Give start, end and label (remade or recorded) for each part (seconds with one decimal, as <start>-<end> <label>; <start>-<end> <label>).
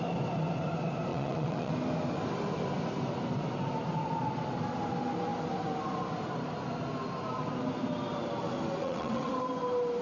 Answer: 0.0-1.1 recorded; 1.1-1.7 remade; 1.7-8.8 recorded; 8.8-9.3 remade; 9.3-10.0 recorded